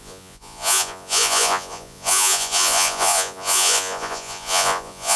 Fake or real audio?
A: fake